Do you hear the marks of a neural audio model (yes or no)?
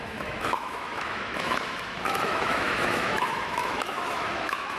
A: yes